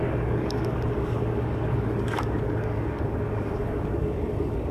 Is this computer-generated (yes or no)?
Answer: yes